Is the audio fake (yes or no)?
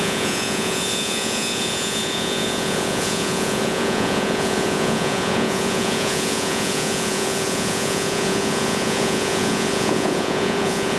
yes